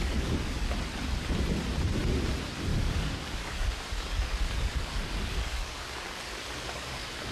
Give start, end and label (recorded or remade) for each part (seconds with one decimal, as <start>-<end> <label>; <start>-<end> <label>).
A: 0.0-0.7 remade; 0.7-2.7 recorded; 2.7-7.3 remade